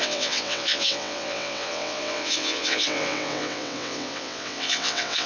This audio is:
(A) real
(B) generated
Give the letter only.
B